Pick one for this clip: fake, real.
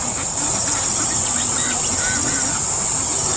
real